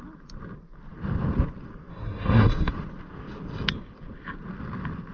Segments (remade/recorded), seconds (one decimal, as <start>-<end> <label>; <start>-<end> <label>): 0.0-1.9 recorded; 1.9-2.7 remade; 2.7-5.1 recorded

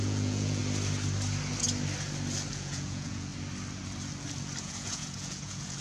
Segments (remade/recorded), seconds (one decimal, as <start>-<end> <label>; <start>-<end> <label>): 0.0-0.6 remade; 0.6-2.5 recorded; 2.5-3.3 remade; 3.3-4.6 recorded; 4.6-5.8 remade

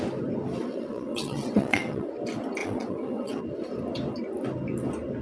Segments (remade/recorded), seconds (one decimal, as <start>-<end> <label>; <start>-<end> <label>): 0.0-0.6 recorded; 0.6-2.1 remade; 2.1-2.6 recorded; 2.6-3.4 remade; 3.4-5.2 recorded

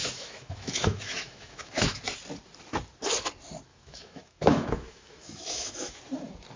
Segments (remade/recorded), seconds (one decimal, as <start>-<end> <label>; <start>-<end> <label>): 0.0-2.0 remade; 2.0-3.7 recorded; 3.7-6.0 remade; 6.0-6.6 recorded